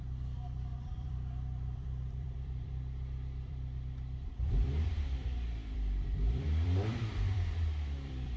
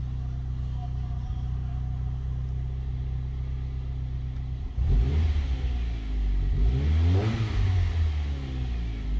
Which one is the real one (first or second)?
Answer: second